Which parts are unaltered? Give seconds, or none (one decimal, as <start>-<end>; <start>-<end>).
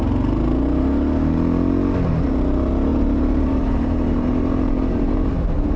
0.0-2.9; 5.3-5.8